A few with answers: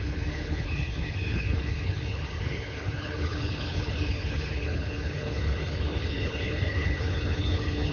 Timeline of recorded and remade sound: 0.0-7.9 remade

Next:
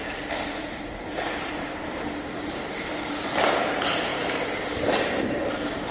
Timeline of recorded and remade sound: 0.0-3.5 remade; 3.5-4.1 recorded; 4.1-4.6 remade; 4.6-5.9 recorded

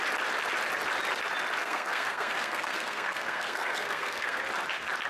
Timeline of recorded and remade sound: 0.0-1.6 recorded; 1.6-4.4 remade; 4.4-5.1 recorded

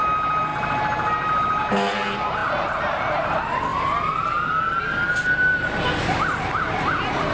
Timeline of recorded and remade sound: 0.0-7.3 recorded

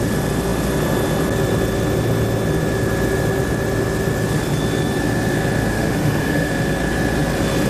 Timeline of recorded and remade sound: 0.0-5.7 recorded; 5.7-6.5 remade; 6.5-7.7 recorded

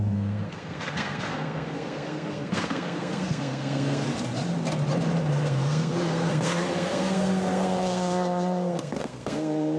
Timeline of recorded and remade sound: 0.0-4.1 remade; 4.1-5.3 recorded; 5.3-9.8 remade

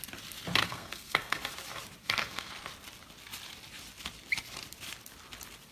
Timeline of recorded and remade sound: 0.0-0.6 recorded; 0.6-1.4 remade; 1.4-2.0 recorded; 2.0-2.5 remade; 2.5-5.7 recorded